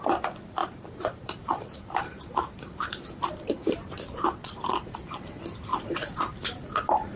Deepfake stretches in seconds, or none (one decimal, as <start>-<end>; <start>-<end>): 0.6-4.9; 5.7-7.2

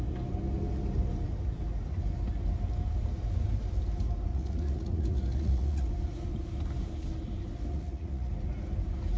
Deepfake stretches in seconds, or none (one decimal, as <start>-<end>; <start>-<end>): 4.3-5.9; 7.7-8.3

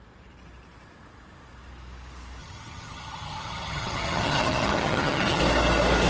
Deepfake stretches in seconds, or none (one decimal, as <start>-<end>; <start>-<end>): 2.4-5.4

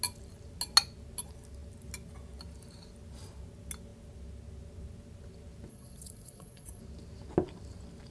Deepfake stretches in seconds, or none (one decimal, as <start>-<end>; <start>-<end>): 5.7-6.8

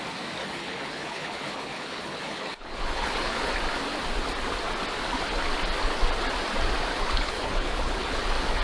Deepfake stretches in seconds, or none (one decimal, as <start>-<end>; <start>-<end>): 0.4-3.5; 6.9-8.2